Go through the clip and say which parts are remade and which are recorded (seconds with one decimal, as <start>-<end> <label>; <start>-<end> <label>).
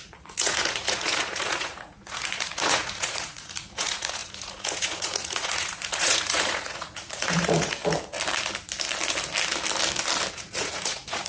0.0-7.8 remade; 7.8-10.3 recorded; 10.3-11.3 remade